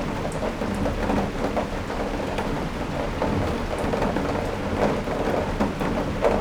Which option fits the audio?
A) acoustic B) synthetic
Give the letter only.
A